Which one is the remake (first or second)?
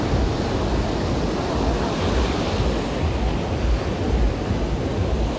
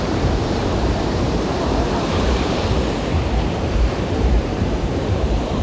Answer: second